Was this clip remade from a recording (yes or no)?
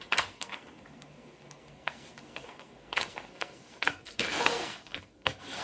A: yes